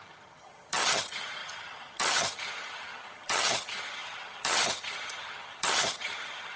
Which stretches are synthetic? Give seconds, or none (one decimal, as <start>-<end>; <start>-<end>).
0.0-6.6